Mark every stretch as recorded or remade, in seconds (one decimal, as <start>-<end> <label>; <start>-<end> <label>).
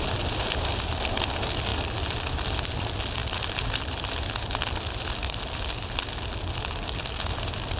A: 0.0-3.2 recorded; 3.2-5.7 remade; 5.7-7.8 recorded